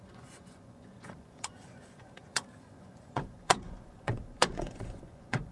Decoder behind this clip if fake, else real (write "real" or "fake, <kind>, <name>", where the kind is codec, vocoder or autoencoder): fake, vocoder, Vocos